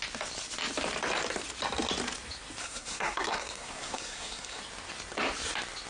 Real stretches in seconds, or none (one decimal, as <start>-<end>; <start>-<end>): 0.0-2.6; 4.6-5.9